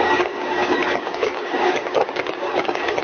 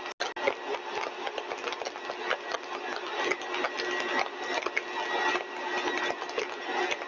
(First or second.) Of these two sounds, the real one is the second